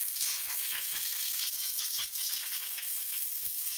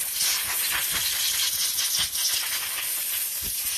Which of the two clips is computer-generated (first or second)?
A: first